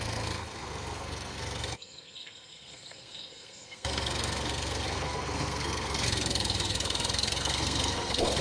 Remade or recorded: remade